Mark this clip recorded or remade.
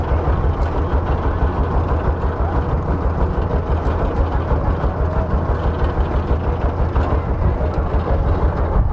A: recorded